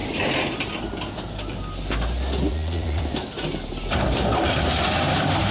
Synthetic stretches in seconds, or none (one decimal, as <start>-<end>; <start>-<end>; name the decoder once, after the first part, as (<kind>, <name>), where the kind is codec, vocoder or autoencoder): 2.5-3.0 (vocoder, Vocos)